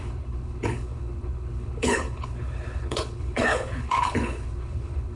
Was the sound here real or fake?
fake